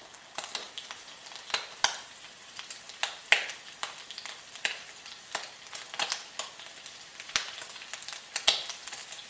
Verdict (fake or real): real